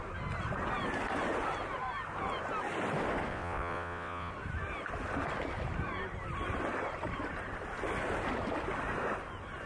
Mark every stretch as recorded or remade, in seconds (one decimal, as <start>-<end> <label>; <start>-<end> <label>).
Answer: 0.0-3.3 recorded; 3.3-4.3 remade; 4.3-9.7 recorded